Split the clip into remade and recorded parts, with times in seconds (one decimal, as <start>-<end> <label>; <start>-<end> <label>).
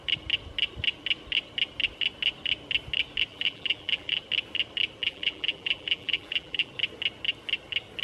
0.0-3.3 recorded; 3.3-4.2 remade; 4.2-5.0 recorded; 5.0-6.7 remade; 6.7-8.0 recorded